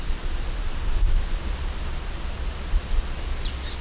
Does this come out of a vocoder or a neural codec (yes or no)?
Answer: no